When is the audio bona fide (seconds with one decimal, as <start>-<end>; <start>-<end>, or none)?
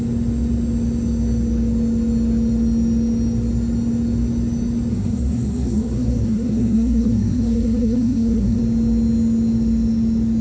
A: 0.0-4.9; 8.6-10.4